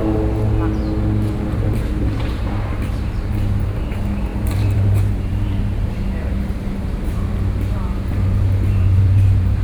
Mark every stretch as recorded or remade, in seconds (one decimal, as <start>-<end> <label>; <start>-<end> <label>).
0.0-1.5 recorded; 1.5-7.3 remade; 7.3-8.1 recorded; 8.1-9.6 remade